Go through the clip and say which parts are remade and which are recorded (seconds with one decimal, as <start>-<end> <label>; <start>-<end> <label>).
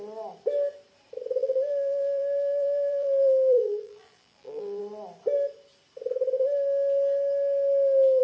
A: 0.0-1.4 recorded; 1.4-4.8 remade; 4.8-8.2 recorded